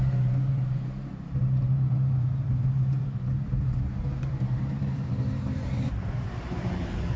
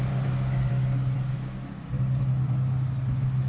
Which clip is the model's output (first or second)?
first